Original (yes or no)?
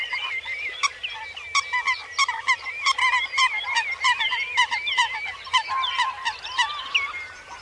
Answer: yes